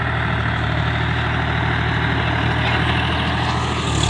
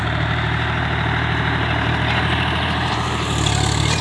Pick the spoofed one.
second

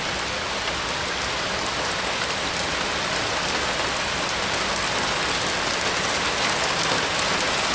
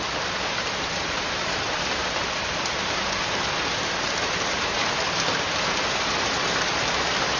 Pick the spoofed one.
second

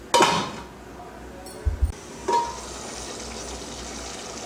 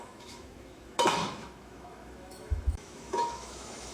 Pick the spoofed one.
second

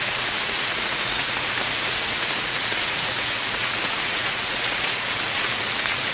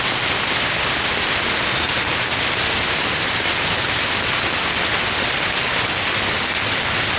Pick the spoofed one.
first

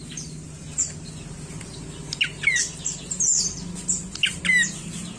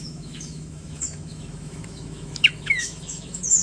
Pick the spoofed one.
second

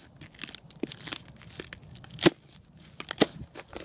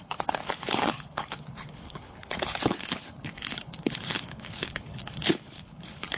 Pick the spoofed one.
second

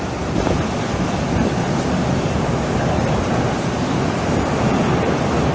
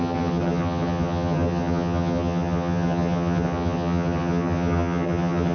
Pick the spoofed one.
second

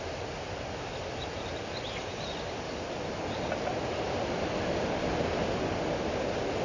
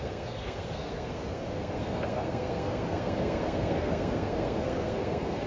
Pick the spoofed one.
second